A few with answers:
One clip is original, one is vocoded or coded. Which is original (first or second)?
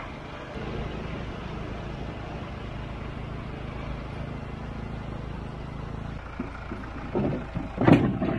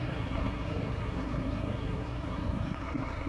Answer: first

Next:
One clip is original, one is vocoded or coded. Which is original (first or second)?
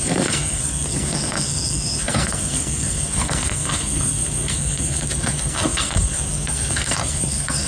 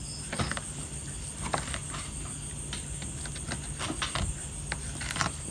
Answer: second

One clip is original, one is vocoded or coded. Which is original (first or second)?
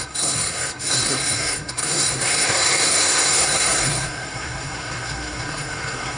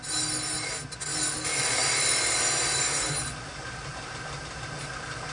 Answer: second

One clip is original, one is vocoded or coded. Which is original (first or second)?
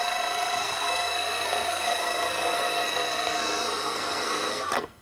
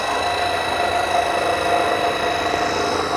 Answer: second